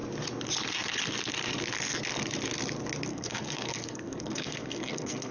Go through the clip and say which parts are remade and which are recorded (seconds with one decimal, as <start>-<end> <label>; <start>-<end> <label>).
0.0-3.1 recorded; 3.1-5.3 remade